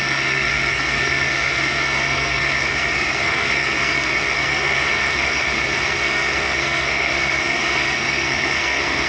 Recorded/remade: remade